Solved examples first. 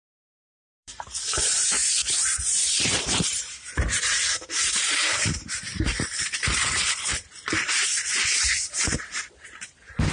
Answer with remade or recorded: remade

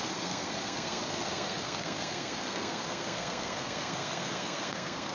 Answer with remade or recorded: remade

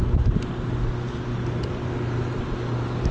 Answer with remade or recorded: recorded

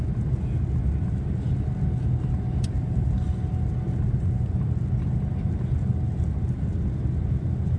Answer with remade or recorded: recorded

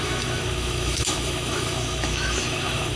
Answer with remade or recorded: remade